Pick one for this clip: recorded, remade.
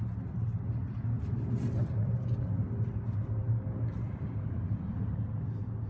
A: recorded